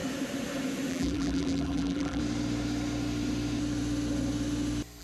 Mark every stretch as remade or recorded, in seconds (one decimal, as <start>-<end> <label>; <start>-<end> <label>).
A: 0.0-0.9 recorded; 0.9-2.2 remade; 2.2-5.0 recorded